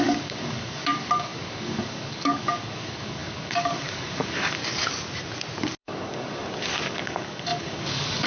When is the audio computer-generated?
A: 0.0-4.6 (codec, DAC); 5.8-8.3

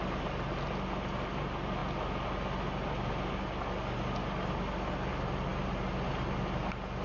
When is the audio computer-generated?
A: none

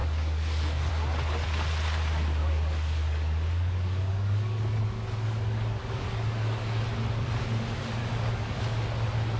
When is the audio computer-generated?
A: 0.0-0.9 (codec, DAC); 2.4-6.8; 8.0-8.6

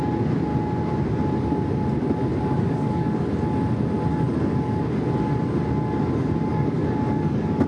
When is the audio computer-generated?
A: 2.3-3.3 (codec, DAC); 4.1-5.0; 6.5-7.7